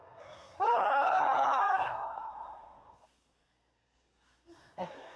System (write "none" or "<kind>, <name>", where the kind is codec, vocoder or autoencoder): codec, SNAC